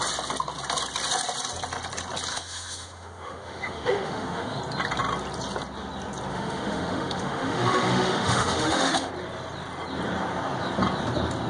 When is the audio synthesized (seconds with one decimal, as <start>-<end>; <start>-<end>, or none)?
2.3-4.6; 6.3-9.1